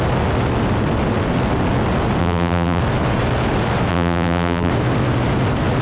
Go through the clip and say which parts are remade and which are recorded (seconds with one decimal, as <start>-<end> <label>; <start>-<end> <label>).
0.0-2.2 recorded; 2.2-2.8 remade; 2.8-3.9 recorded; 3.9-4.7 remade; 4.7-5.8 recorded